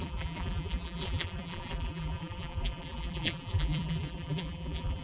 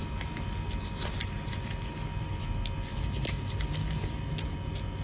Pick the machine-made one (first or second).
first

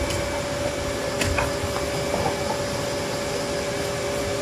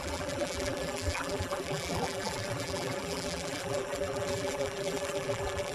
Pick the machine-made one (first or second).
second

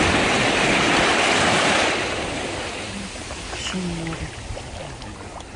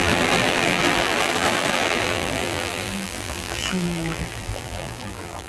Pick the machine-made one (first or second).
second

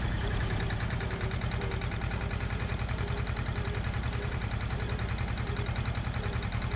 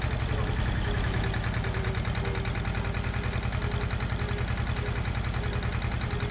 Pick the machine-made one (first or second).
first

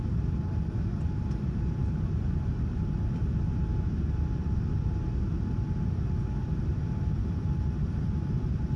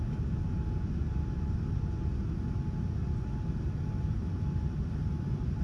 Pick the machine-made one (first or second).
first